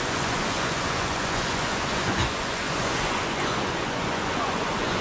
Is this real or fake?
fake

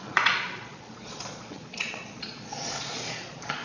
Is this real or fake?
fake